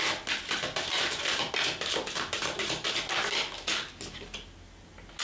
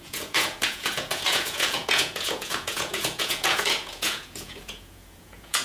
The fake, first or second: second